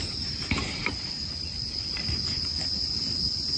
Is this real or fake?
real